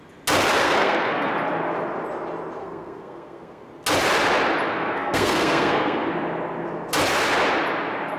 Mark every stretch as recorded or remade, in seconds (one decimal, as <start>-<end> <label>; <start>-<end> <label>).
0.0-0.6 recorded; 0.6-1.3 remade; 1.3-2.6 recorded; 2.6-3.7 remade; 3.7-4.7 recorded; 4.7-6.1 remade; 6.1-8.2 recorded